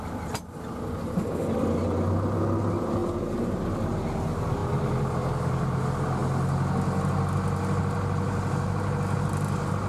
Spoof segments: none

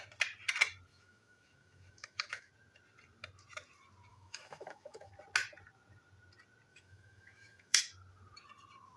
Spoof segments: 0.9-2.5; 4.1-5.1; 6.7-7.8